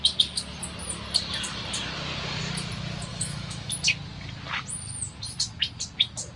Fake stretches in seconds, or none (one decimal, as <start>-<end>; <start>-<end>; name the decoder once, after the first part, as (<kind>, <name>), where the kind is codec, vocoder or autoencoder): 3.1-3.7 (autoencoder, DAC-VAE)